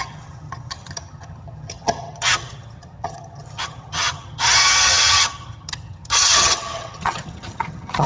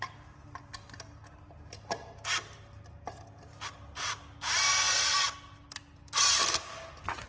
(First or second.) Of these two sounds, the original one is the second